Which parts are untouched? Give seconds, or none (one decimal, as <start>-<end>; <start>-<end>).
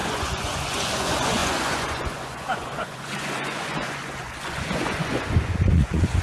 none